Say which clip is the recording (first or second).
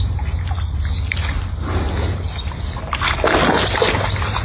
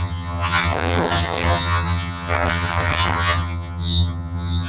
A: first